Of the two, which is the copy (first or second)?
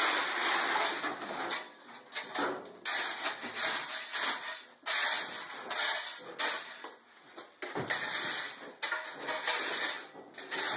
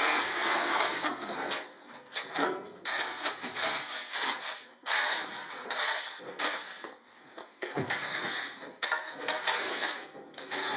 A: second